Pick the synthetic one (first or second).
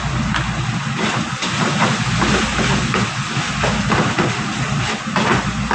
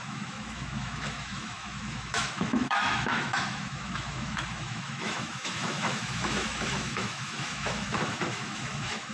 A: second